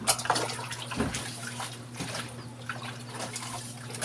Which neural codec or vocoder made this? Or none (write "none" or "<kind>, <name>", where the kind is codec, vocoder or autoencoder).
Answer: none